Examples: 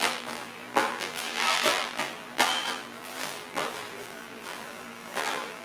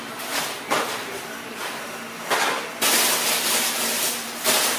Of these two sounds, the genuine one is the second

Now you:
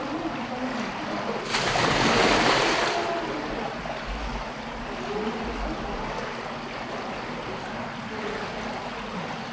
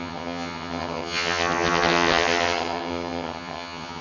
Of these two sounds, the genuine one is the first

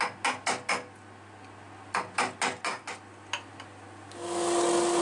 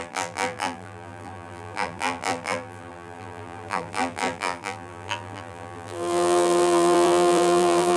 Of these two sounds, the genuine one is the first